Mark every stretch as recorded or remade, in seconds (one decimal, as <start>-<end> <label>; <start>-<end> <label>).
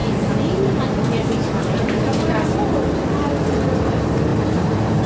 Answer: 0.0-1.5 recorded; 1.5-5.1 remade